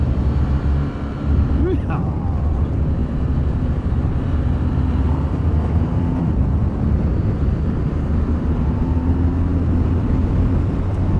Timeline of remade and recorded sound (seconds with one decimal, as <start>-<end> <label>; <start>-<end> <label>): 0.0-9.5 remade; 9.5-10.6 recorded; 10.6-11.2 remade

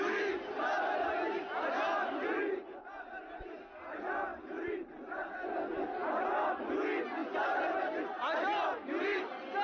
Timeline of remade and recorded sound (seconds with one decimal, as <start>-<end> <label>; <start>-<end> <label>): 0.0-4.3 recorded; 4.3-4.9 remade; 4.9-6.0 recorded; 6.0-6.7 remade; 6.7-9.6 recorded

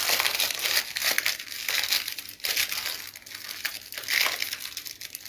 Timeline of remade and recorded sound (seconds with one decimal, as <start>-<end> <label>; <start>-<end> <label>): 0.0-5.3 recorded

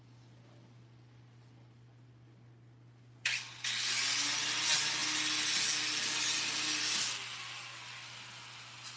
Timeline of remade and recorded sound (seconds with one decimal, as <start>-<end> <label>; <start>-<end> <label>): 0.0-9.0 recorded

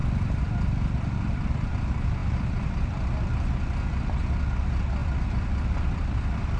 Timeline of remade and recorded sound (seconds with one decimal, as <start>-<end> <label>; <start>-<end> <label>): 0.0-1.7 remade; 1.7-2.2 recorded; 2.2-2.7 remade; 2.7-5.0 recorded; 5.0-6.6 remade

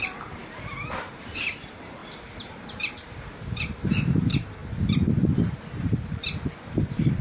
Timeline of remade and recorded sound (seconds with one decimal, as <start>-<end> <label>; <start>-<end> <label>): 0.0-4.6 remade; 4.6-5.8 recorded; 5.8-7.2 remade

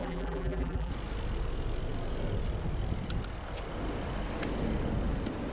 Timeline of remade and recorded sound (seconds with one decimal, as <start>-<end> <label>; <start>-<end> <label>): 0.0-0.9 remade; 0.9-5.5 recorded